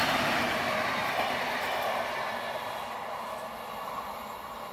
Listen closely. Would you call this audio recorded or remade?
recorded